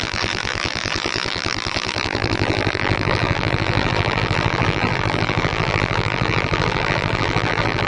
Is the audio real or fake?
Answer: fake